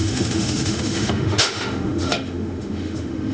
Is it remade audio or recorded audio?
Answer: remade